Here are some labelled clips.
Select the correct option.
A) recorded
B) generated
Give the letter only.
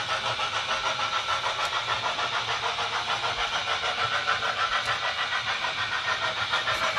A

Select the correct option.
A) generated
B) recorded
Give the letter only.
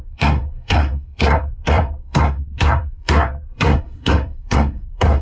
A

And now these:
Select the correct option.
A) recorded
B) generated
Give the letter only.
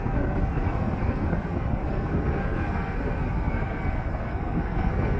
B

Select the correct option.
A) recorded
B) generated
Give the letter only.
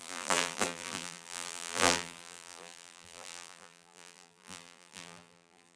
B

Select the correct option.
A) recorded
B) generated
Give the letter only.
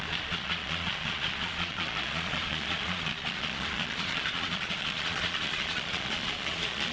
B